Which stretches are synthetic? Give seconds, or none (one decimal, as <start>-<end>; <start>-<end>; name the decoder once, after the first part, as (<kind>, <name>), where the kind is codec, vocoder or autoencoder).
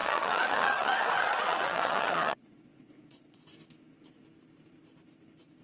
0.0-3.4 (vocoder, Vocos)